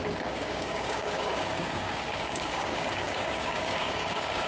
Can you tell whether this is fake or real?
fake